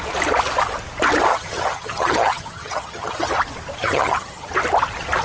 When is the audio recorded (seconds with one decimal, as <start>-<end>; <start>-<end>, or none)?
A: 0.0-1.3; 3.3-3.8; 4.5-5.2